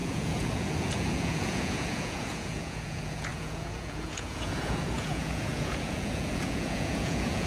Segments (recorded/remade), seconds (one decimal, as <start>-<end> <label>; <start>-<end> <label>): 0.0-7.5 remade

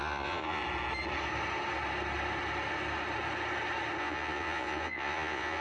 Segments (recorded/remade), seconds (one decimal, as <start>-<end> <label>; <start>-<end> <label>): 0.0-0.6 remade; 0.6-4.0 recorded; 4.0-5.6 remade

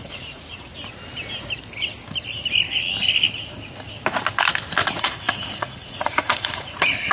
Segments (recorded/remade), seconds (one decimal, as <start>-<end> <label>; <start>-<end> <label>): 0.0-0.7 remade; 0.7-5.0 recorded; 5.0-7.1 remade

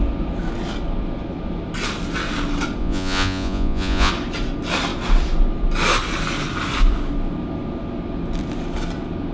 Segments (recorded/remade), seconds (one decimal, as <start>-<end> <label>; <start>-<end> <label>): 0.0-2.8 recorded; 2.8-4.1 remade; 4.1-9.3 recorded